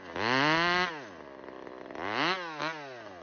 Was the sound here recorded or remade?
recorded